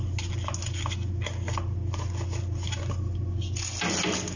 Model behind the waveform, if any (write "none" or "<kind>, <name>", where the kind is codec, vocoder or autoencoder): none